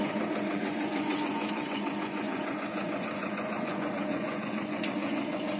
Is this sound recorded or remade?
remade